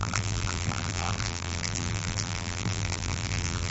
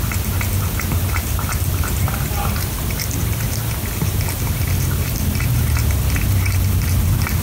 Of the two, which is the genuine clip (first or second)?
second